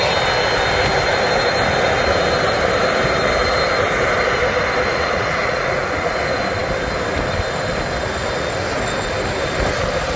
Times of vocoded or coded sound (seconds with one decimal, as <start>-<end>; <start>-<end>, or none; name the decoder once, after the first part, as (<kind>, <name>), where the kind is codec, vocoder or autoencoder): 4.9-6.1 (vocoder, Vocos)